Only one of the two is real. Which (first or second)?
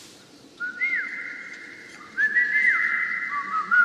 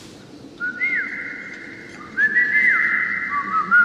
second